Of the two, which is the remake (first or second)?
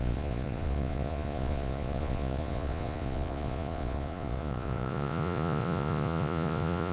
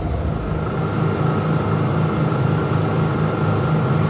first